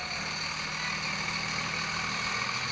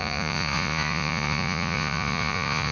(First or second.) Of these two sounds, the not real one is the second